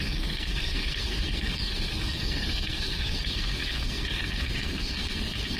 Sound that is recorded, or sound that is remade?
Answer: remade